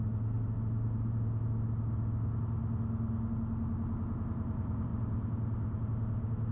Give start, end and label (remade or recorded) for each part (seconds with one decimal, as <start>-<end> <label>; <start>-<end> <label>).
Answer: 0.0-6.5 recorded